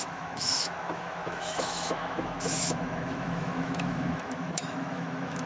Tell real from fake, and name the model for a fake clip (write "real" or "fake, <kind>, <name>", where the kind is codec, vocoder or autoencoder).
fake, autoencoder, DAC-VAE